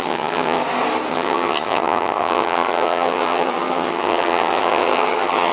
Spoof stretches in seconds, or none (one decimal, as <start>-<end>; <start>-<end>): 0.0-0.6; 1.1-5.5